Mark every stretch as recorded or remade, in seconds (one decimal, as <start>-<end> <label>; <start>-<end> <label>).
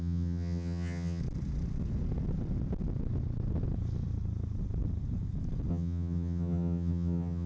0.0-1.2 remade; 1.2-5.7 recorded; 5.7-7.5 remade